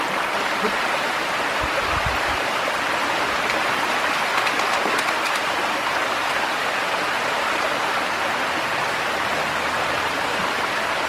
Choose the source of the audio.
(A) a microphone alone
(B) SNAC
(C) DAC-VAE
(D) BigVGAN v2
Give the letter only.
A